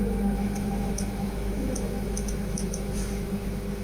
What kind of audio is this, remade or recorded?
remade